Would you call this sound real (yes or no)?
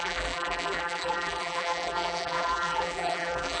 no